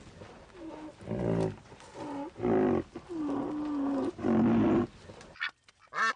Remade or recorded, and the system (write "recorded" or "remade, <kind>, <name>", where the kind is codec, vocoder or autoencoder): recorded